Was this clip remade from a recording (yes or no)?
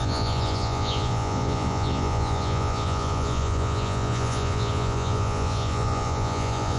yes